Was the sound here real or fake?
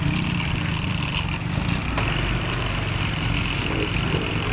real